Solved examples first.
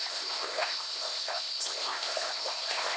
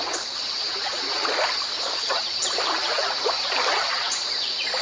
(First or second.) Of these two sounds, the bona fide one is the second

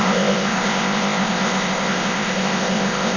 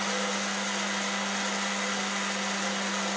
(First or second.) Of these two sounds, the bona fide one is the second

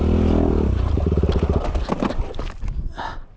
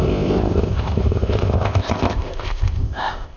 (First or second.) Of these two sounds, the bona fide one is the first